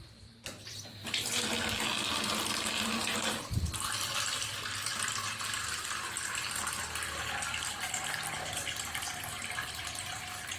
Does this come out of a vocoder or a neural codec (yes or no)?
no